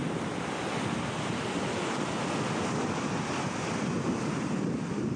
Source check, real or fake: real